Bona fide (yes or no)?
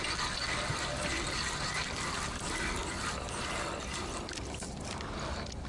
yes